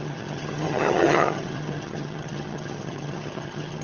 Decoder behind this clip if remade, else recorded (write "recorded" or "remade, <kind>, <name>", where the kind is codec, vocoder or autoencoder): remade, vocoder, HiFi-GAN